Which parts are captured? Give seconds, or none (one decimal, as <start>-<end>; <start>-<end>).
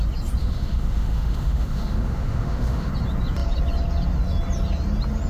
0.0-0.4; 2.9-5.3